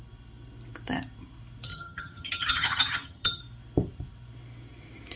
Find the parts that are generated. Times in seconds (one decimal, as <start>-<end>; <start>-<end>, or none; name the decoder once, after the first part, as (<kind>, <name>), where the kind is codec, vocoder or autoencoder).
1.7-3.4 (vocoder, HiFi-GAN)